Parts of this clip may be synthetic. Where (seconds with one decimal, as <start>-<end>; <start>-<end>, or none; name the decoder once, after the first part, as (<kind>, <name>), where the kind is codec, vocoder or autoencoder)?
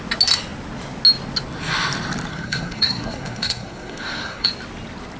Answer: 2.3-4.5 (codec, SNAC)